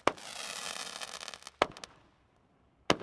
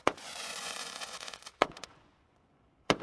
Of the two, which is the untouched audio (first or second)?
first